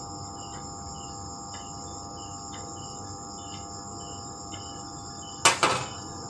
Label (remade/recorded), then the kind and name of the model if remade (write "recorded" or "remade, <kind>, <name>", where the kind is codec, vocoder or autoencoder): recorded